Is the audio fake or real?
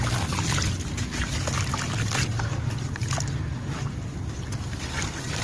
real